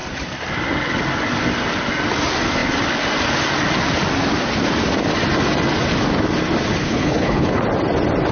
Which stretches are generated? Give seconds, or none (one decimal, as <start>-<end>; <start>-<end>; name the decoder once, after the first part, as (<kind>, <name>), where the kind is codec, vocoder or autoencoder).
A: 6.8-7.6 (codec, HILCodec)